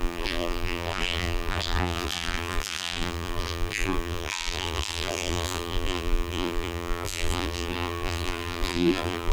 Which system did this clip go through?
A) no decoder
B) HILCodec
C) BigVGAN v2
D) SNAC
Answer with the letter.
C